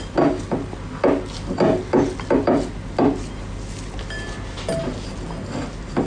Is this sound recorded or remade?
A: recorded